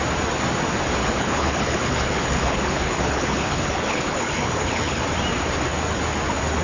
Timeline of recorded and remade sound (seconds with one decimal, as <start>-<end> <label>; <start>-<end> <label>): 0.0-1.0 recorded; 1.0-5.0 remade; 5.0-6.6 recorded